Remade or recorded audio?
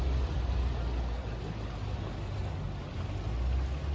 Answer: recorded